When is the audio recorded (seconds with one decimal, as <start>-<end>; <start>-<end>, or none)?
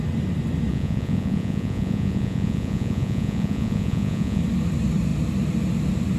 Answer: 0.0-0.7; 4.4-6.2